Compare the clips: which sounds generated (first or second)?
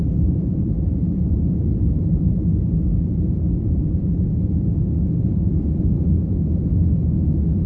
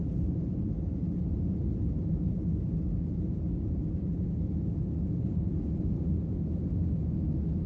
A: first